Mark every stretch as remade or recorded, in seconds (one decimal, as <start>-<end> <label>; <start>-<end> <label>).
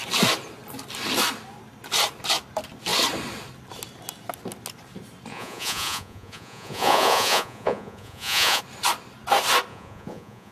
0.0-5.3 recorded; 5.3-8.6 remade; 8.6-9.7 recorded; 9.7-10.5 remade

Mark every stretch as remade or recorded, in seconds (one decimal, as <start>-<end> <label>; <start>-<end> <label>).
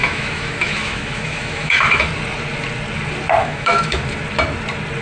0.0-2.1 remade; 2.1-3.4 recorded; 3.4-4.0 remade; 4.0-5.0 recorded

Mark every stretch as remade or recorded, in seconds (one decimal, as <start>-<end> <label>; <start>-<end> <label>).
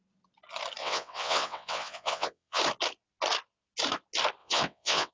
0.0-0.8 recorded; 0.8-2.6 remade; 2.6-4.4 recorded; 4.4-5.1 remade